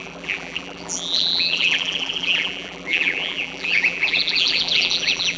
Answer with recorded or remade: remade